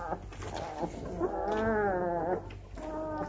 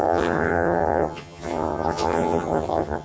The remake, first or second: second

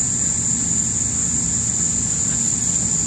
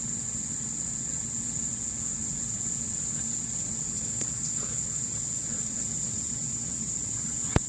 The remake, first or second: second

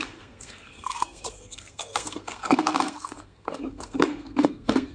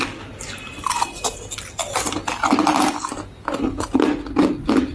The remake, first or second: first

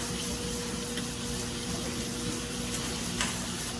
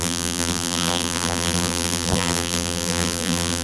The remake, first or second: second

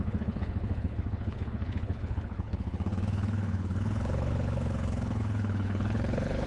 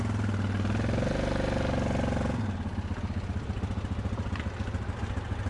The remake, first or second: first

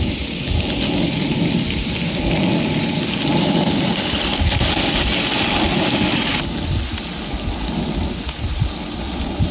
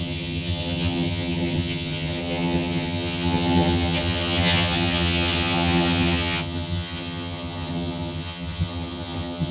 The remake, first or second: second